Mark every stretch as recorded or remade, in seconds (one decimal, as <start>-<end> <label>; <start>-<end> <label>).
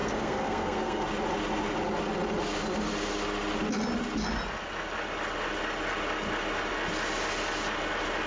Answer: 0.0-1.0 remade; 1.0-8.3 recorded